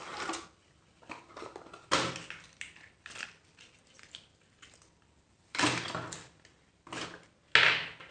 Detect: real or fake real